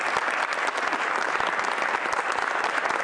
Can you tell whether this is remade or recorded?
recorded